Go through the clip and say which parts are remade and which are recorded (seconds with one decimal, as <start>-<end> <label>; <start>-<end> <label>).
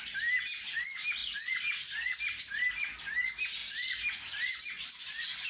0.0-5.5 recorded